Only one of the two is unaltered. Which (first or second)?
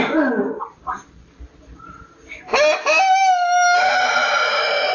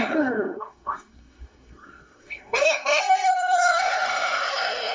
first